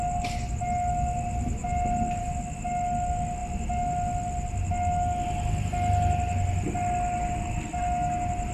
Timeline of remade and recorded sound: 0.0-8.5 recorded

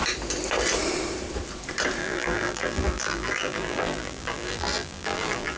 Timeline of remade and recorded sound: 0.0-2.0 recorded; 2.0-5.6 remade

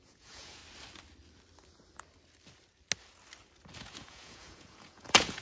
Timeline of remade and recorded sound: 0.0-0.6 remade; 0.6-3.8 recorded; 3.8-5.4 remade

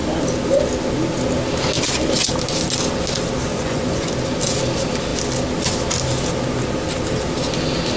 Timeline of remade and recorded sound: 0.0-3.5 recorded; 3.5-4.1 remade; 4.1-8.0 recorded

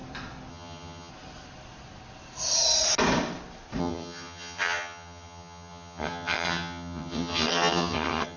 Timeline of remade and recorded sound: 0.0-0.5 recorded; 0.5-1.1 remade; 1.1-3.8 recorded; 3.8-8.4 remade

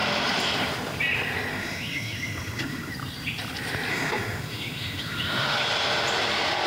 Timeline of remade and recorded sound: 0.0-1.5 recorded; 1.5-2.9 remade; 2.9-3.9 recorded; 3.9-5.6 remade; 5.6-6.7 recorded